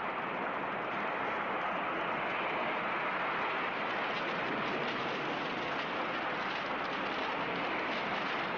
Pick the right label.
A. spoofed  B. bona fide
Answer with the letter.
B